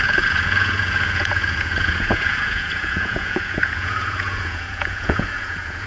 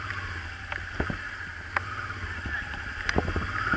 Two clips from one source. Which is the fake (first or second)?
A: first